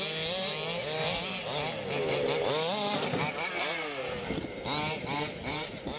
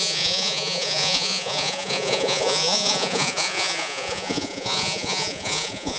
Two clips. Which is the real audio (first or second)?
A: first